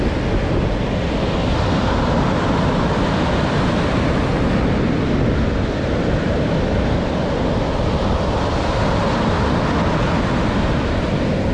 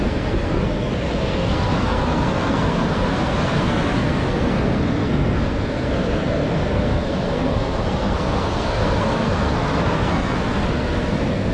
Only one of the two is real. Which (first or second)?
first